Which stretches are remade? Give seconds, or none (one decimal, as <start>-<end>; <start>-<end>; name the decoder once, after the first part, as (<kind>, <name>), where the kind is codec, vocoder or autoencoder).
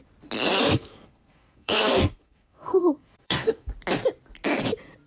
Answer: 0.6-3.7 (codec, SNAC)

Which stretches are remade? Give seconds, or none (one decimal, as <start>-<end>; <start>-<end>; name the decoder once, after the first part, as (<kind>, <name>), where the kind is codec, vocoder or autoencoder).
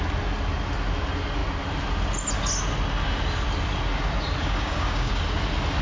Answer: 4.4-5.2 (codec, DAC)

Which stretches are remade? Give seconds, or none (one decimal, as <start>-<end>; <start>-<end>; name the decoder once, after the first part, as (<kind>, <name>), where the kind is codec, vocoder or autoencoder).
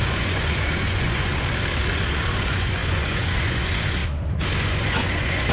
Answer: 0.0-1.3 (vocoder, Vocos); 1.8-4.0; 4.5-5.5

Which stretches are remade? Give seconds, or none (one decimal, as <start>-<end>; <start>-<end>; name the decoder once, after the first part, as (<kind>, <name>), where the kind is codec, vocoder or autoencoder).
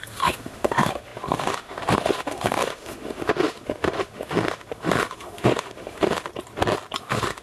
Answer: 0.0-6.3 (autoencoder, DAC-VAE); 7.0-7.4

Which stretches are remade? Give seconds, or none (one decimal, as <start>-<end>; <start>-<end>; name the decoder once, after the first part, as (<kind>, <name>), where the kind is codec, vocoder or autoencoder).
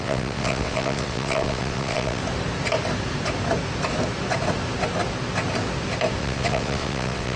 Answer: 0.0-2.2 (vocoder, WaveNeXt); 6.2-7.4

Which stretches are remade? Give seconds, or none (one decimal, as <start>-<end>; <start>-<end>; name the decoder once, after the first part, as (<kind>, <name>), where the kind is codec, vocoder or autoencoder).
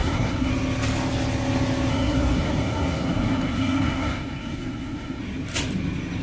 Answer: 0.0-0.5 (codec, SNAC); 1.9-5.2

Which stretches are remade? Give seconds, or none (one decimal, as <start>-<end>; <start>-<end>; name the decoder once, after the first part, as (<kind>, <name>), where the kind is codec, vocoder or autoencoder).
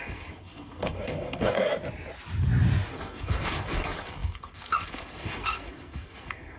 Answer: 0.0-1.7 (codec, SNAC); 2.9-6.6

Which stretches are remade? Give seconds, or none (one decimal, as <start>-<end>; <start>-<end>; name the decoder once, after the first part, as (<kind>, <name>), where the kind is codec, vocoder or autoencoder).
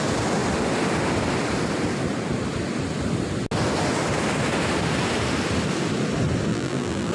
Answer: 6.5-7.1 (vocoder, BigVGAN v2)